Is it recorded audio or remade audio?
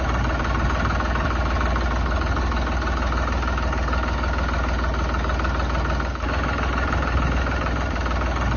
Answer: recorded